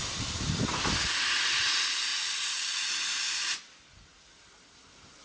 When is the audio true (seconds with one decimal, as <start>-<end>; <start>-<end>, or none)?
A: 0.0-5.2